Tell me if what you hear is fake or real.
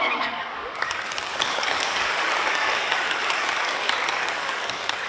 fake